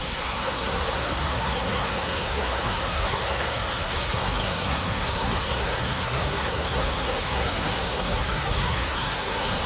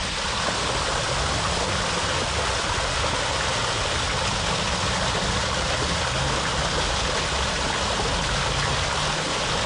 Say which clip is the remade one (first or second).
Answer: first